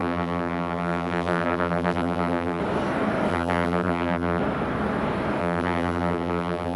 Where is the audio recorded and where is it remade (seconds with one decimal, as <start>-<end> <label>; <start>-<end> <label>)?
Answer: 0.0-2.6 remade; 2.6-3.3 recorded; 3.3-4.4 remade; 4.4-5.4 recorded; 5.4-6.8 remade